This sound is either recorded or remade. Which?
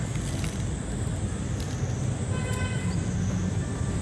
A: recorded